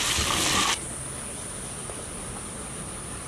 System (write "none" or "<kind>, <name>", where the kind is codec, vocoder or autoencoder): none